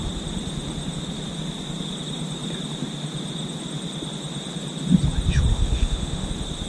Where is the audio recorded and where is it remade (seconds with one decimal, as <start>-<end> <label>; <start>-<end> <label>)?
0.0-5.5 recorded; 5.5-6.3 remade; 6.3-6.7 recorded